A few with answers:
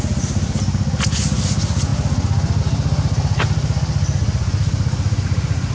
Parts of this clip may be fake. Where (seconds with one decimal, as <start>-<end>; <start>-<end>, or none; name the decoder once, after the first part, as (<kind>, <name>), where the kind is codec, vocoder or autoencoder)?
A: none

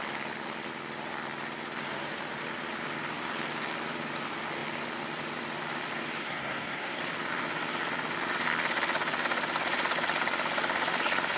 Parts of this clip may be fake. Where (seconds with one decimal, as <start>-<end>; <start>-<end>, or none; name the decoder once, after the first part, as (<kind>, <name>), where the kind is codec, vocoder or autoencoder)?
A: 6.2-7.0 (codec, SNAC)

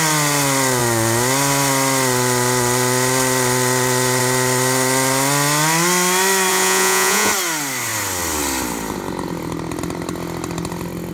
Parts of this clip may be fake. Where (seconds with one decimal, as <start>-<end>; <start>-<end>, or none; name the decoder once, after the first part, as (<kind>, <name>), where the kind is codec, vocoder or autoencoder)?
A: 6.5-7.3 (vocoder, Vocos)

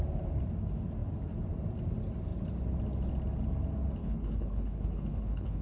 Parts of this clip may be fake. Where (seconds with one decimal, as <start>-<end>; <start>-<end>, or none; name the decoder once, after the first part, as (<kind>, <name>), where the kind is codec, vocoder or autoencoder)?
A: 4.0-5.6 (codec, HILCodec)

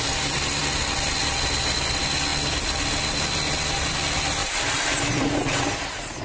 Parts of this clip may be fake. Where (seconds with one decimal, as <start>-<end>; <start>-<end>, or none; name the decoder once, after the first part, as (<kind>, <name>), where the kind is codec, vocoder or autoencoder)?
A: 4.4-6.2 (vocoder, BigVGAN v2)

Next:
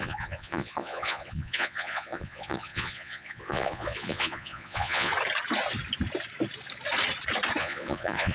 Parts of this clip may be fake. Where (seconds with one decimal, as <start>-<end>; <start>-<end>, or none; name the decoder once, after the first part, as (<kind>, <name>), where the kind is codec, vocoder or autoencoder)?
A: 0.0-5.1 (vocoder, Vocos); 7.6-8.3

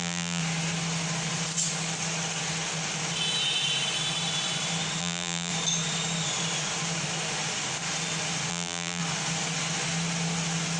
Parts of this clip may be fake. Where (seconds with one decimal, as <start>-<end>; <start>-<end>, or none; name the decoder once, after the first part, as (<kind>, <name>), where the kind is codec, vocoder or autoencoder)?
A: 0.0-0.4 (vocoder, BigVGAN v2); 5.0-5.5; 8.5-9.0

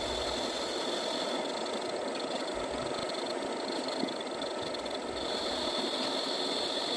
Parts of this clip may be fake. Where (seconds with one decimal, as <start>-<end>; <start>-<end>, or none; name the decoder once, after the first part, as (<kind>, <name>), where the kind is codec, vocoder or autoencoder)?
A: none